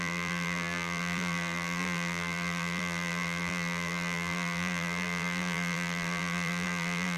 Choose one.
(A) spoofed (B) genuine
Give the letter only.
A